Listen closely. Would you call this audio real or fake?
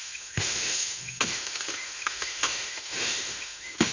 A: fake